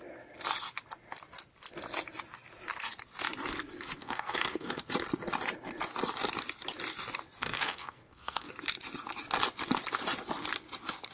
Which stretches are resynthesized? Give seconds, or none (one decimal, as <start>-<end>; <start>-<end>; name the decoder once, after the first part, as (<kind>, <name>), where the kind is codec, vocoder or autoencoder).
4.0-4.8 (codec, SNAC); 7.4-8.5

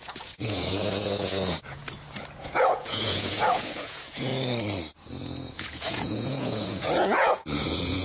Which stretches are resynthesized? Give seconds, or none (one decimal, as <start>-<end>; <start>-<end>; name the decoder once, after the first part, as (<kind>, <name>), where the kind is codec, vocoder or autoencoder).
0.0-1.8 (vocoder, Vocos); 2.4-4.3; 5.1-8.0

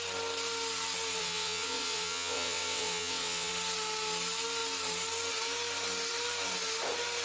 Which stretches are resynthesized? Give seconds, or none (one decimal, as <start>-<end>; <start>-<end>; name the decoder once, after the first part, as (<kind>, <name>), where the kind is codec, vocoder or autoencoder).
1.2-3.5 (vocoder, WaveNeXt)

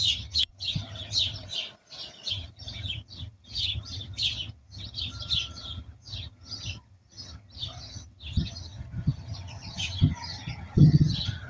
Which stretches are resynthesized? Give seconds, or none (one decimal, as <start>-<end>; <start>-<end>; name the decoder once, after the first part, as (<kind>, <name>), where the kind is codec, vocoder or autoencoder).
0.0-1.5 (vocoder, HiFi-GAN); 2.3-11.5

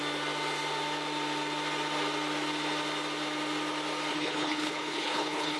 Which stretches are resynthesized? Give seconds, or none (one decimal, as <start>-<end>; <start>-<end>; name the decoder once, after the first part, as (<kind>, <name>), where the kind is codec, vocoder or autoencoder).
4.1-5.6 (codec, HILCodec)

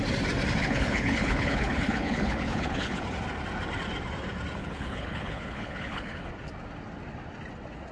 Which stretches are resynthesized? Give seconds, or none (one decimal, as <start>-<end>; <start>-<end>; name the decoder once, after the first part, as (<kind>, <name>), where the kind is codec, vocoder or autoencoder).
0.6-3.0 (codec, HILCodec); 4.6-6.3